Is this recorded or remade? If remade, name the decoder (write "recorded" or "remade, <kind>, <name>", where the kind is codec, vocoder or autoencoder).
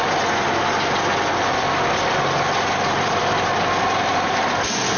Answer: recorded